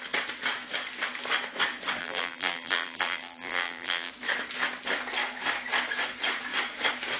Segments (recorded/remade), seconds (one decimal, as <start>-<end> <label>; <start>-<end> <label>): 0.0-2.0 recorded; 2.0-4.1 remade; 4.1-7.2 recorded